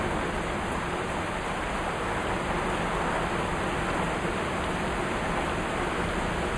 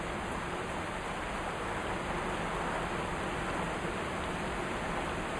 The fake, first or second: second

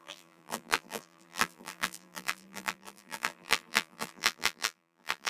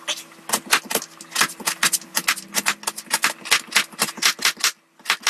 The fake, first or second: first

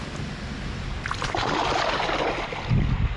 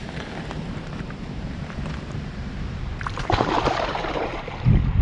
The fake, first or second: second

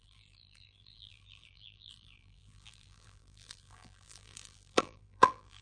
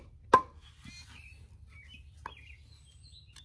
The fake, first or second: first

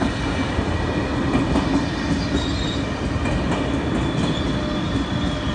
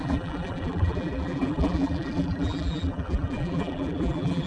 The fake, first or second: second